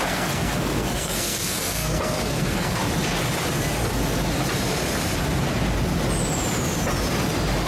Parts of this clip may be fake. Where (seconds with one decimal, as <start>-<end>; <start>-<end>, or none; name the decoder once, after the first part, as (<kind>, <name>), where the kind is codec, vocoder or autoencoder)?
0.0-2.8 (codec, SNAC)